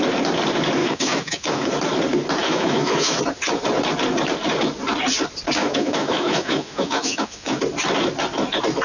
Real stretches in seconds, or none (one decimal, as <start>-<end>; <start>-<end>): 0.0-0.8; 1.7-2.4; 3.2-5.6; 7.6-8.8